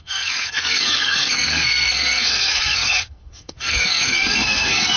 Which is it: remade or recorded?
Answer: remade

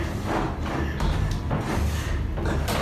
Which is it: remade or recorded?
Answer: recorded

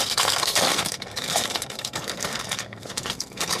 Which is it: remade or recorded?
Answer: remade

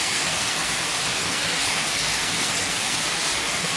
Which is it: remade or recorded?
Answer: remade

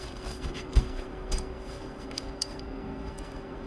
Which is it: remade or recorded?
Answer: remade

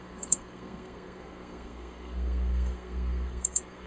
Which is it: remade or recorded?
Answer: remade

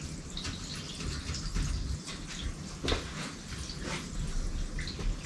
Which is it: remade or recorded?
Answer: recorded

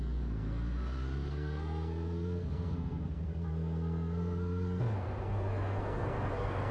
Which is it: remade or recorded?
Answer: remade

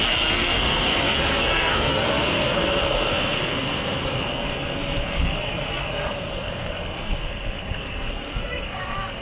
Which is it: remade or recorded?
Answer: remade